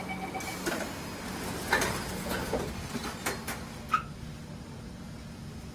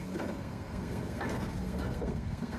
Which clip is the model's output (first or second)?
second